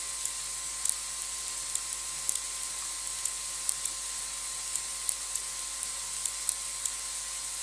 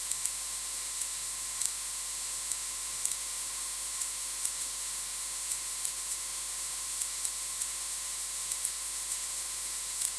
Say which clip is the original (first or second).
first